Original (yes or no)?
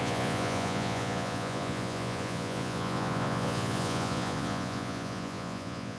no